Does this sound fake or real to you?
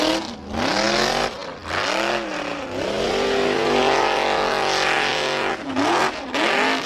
real